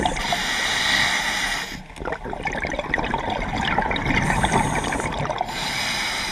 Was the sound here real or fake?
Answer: real